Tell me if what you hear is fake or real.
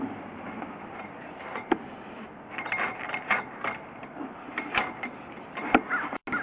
real